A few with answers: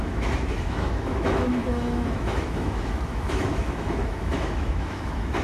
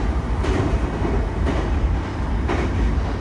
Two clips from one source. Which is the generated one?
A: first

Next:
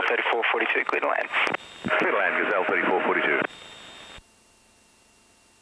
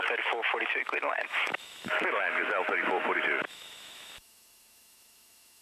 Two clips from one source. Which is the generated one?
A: second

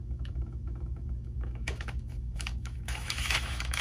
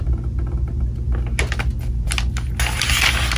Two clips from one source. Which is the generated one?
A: first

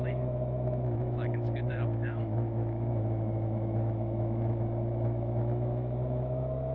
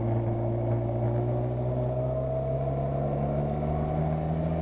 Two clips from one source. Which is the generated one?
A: first